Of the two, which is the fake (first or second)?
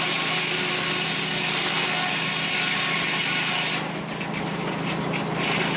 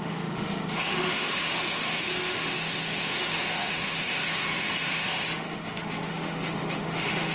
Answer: second